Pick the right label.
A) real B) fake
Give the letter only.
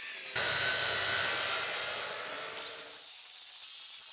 A